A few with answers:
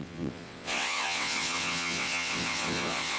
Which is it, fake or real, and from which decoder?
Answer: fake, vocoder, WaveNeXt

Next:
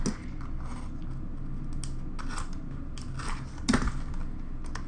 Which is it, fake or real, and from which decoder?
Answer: real